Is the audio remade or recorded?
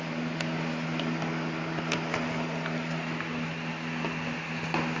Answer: recorded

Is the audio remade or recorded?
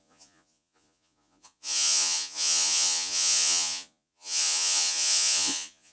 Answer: remade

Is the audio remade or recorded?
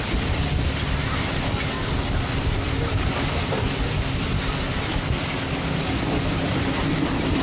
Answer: recorded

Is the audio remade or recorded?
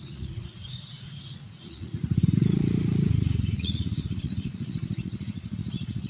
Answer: remade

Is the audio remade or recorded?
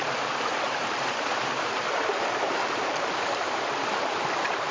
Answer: remade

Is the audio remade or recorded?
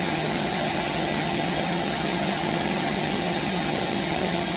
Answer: remade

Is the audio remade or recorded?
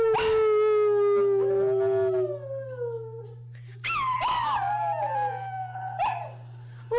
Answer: recorded